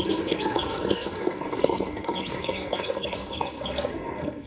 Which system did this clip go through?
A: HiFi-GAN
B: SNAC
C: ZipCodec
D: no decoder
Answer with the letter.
B